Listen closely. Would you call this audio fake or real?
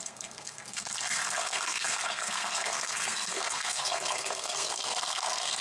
fake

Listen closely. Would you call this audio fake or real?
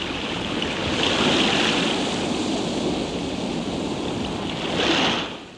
real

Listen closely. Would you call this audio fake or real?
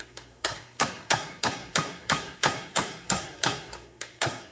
fake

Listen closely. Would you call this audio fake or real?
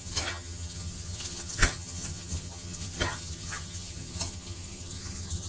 fake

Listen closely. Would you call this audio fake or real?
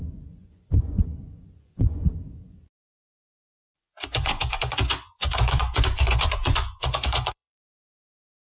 fake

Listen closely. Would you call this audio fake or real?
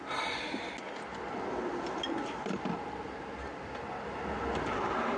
real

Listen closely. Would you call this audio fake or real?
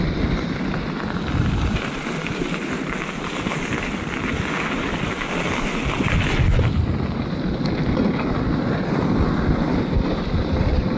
real